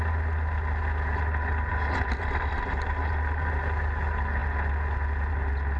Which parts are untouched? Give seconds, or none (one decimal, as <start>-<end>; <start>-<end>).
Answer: 0.0-5.8